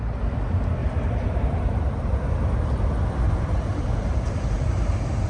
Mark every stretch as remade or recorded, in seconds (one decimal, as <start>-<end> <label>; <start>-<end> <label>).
0.0-0.8 recorded; 0.8-1.9 remade; 1.9-3.7 recorded; 3.7-5.3 remade